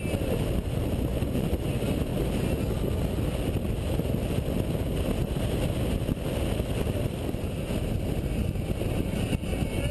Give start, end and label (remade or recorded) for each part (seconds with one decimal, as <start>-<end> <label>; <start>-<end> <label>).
0.0-1.1 recorded; 1.1-1.7 remade; 1.7-9.9 recorded

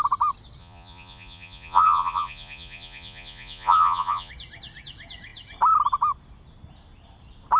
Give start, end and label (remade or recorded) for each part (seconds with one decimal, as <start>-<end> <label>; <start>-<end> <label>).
0.0-0.6 recorded; 0.6-4.3 remade; 4.3-7.6 recorded

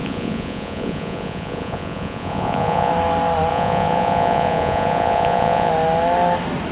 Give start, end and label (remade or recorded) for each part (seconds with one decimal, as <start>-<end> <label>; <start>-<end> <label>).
0.0-2.9 remade; 2.9-3.5 recorded; 3.5-5.7 remade; 5.7-6.7 recorded

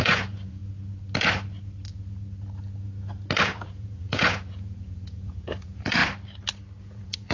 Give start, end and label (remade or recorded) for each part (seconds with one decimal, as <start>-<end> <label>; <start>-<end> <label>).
0.0-0.6 remade; 0.6-3.4 recorded; 3.4-6.0 remade; 6.0-6.8 recorded; 6.8-7.3 remade

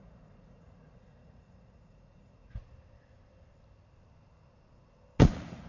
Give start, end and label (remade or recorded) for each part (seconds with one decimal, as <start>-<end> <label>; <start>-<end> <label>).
0.0-2.6 remade; 2.6-5.2 recorded; 5.2-5.7 remade